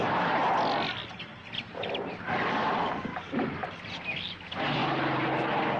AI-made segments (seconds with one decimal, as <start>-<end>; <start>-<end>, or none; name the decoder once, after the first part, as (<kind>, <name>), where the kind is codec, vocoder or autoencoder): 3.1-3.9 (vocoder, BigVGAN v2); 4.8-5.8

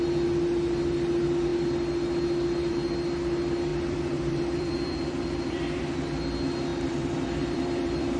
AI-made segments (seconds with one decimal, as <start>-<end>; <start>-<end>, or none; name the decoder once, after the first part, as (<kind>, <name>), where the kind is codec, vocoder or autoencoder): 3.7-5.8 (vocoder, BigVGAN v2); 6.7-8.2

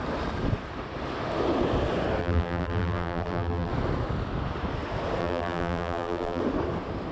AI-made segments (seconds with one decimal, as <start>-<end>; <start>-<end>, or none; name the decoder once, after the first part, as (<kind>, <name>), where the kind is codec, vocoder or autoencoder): 2.2-3.7 (vocoder, BigVGAN v2); 5.2-6.4

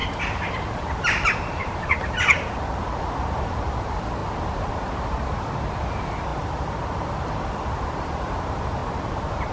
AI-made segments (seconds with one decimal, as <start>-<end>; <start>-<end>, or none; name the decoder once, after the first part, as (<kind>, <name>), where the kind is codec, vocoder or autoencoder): 0.7-8.8 (vocoder, BigVGAN v2)